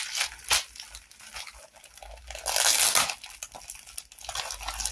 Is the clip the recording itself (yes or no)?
yes